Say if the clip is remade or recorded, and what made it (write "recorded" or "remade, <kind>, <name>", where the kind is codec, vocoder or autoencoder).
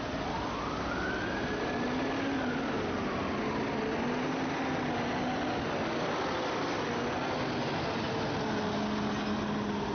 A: recorded